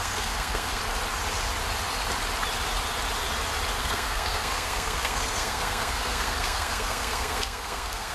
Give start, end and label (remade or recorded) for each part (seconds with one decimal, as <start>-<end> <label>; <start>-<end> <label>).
0.0-0.8 remade; 0.8-3.8 recorded; 3.8-8.1 remade